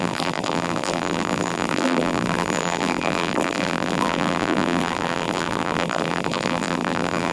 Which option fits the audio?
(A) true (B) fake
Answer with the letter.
B